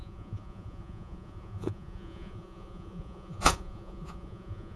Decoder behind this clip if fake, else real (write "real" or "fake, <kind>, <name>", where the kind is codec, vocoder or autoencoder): fake, vocoder, Vocos